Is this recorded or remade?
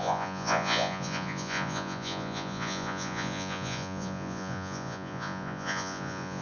remade